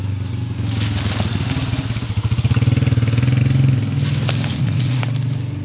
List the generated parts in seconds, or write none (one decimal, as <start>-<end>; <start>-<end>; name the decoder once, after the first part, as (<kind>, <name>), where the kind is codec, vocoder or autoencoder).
4.5-5.0 (vocoder, Vocos)